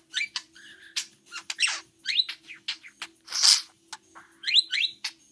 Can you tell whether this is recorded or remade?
recorded